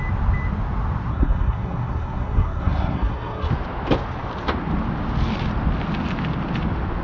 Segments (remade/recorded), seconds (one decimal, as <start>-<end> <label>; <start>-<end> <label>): 0.0-1.1 recorded; 1.1-3.5 remade; 3.5-7.0 recorded